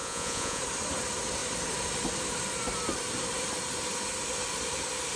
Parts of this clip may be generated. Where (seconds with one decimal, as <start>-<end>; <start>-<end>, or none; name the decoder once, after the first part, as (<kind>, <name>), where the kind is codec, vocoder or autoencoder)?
0.0-0.6 (vocoder, Vocos)